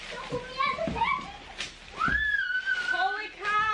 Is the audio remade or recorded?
recorded